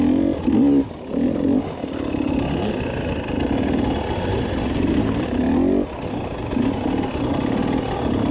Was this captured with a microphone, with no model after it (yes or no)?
yes